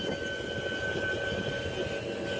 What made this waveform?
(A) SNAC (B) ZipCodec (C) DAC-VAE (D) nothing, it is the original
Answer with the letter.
D